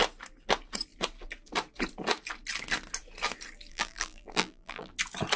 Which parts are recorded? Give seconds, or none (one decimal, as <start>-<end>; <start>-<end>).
0.0-3.7; 4.9-5.4